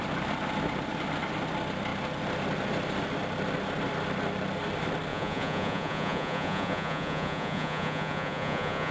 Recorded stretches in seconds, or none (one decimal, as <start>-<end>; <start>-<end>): 0.0-5.1